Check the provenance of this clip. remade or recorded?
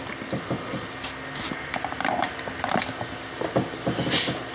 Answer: recorded